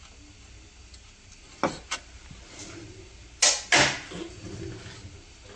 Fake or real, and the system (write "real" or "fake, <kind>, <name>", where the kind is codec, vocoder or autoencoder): real